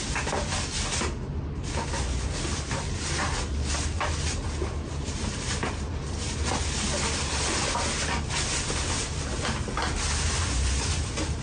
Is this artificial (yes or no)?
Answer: no